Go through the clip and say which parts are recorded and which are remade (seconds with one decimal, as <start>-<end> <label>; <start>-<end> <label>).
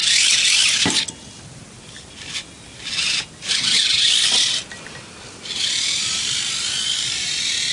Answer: 0.0-1.4 recorded; 1.4-7.7 remade